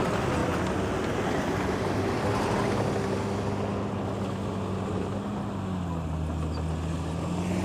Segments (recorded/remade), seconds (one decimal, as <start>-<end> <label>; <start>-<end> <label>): 0.0-7.6 recorded